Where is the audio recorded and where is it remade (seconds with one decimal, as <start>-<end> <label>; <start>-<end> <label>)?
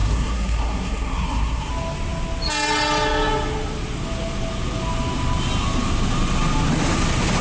0.0-1.7 remade; 1.7-7.4 recorded